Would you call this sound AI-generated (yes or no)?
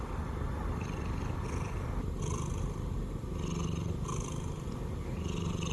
no